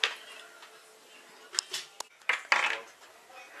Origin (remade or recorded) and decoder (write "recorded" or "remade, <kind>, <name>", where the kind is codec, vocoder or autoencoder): recorded